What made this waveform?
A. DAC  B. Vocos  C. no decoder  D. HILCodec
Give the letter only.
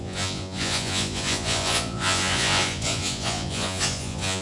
B